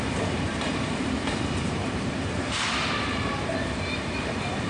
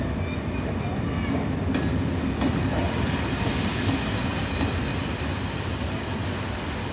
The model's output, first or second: first